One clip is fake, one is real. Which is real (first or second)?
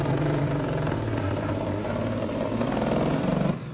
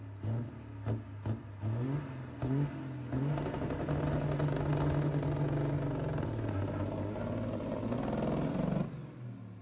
second